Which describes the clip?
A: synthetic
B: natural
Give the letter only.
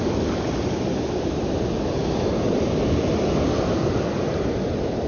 B